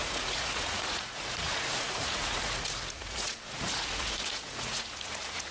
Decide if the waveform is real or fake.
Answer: fake